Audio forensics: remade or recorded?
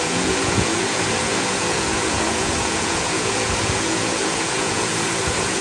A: remade